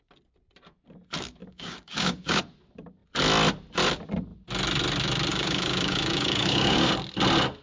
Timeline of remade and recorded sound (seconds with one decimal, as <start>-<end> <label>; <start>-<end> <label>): 0.0-1.4 recorded; 1.4-2.4 remade; 2.4-5.3 recorded; 5.3-6.9 remade; 6.9-7.6 recorded